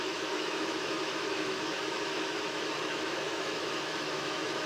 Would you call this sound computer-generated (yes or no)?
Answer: yes